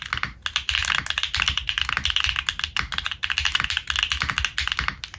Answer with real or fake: real